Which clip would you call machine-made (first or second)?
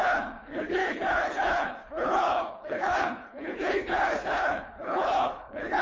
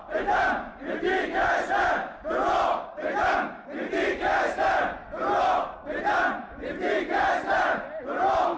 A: first